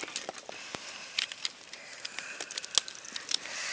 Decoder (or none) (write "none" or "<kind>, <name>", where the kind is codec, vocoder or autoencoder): none